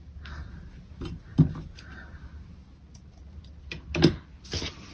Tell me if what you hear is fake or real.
real